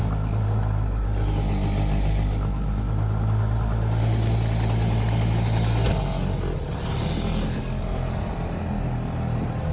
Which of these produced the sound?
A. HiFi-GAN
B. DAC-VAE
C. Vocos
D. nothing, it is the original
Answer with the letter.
D